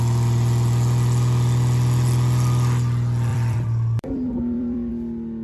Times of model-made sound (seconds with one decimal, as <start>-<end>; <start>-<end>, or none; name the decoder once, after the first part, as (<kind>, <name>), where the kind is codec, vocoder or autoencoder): 3.3-4.9 (vocoder, BigVGAN v2)